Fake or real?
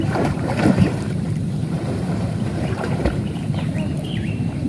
fake